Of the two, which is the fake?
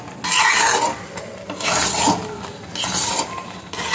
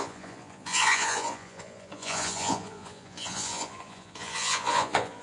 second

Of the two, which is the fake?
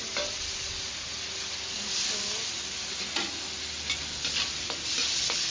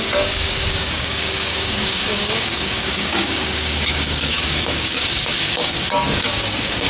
second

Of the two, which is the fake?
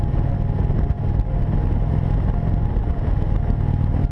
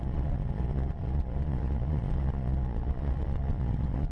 second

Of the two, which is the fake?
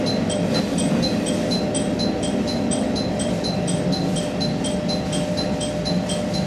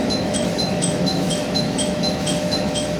second